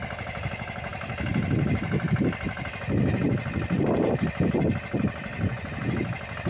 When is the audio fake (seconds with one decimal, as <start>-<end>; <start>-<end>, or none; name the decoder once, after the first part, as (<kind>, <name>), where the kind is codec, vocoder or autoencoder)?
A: 5.3-5.9 (vocoder, Vocos)